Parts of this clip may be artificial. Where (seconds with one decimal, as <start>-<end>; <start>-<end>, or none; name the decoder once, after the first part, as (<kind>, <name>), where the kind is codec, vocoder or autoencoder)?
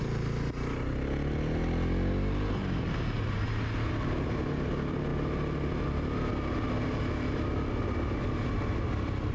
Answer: none